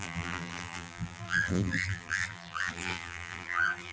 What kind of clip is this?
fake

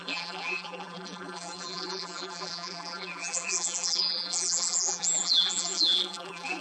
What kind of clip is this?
fake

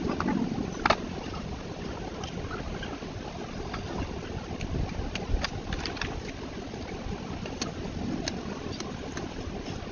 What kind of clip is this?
real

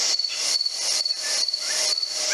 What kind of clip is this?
real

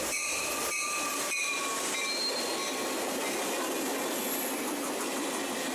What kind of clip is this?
real